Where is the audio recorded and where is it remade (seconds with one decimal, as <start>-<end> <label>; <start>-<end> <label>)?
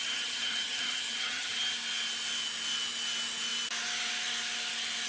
0.0-1.6 remade; 1.6-5.1 recorded